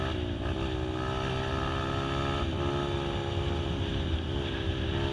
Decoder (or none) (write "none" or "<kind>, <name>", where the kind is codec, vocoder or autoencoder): none